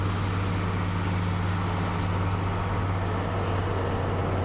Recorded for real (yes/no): yes